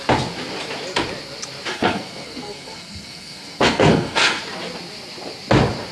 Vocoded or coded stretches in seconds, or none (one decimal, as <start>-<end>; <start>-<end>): 1.7-4.4